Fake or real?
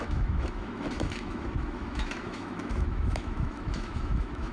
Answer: fake